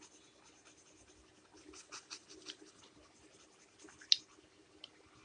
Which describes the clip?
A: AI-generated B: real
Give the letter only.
B